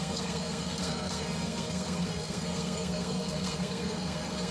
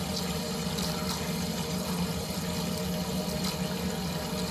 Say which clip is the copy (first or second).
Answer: first